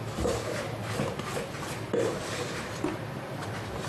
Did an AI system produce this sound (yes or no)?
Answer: no